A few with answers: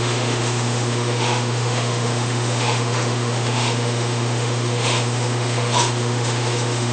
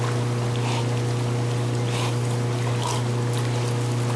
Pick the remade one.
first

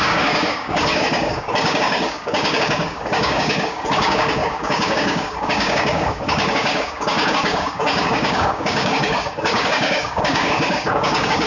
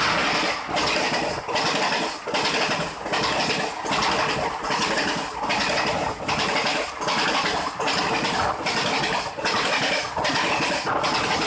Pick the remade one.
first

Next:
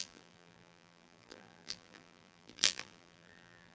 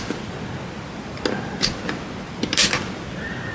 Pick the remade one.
first